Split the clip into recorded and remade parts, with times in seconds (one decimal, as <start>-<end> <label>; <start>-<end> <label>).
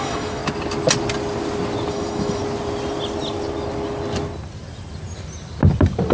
0.0-0.4 remade; 0.4-1.9 recorded; 1.9-2.4 remade; 2.4-6.1 recorded